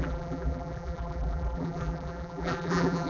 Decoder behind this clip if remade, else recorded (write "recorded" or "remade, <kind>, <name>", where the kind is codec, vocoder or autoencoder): remade, vocoder, BigVGAN v2